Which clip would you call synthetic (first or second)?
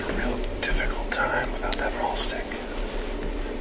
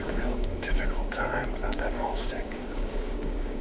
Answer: second